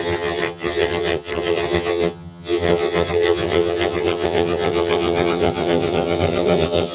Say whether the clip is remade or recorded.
remade